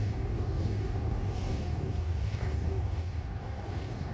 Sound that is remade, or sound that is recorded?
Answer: remade